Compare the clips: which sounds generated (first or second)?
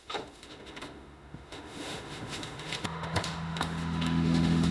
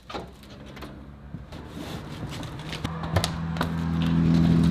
first